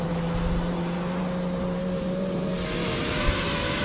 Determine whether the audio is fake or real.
real